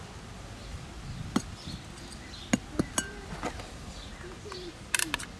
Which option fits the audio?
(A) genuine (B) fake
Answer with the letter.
A